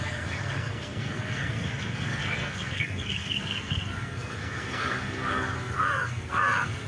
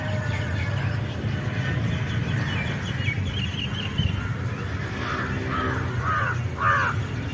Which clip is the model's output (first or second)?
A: first